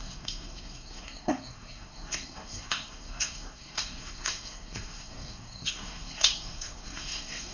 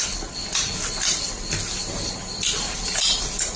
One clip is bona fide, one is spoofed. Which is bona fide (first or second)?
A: second